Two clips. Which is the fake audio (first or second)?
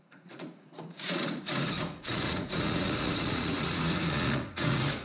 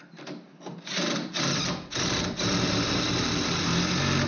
first